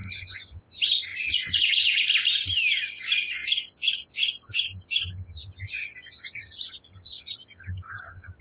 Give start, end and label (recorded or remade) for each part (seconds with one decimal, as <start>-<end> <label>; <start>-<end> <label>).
0.0-0.6 remade; 0.6-1.1 recorded; 1.1-2.0 remade; 2.0-8.4 recorded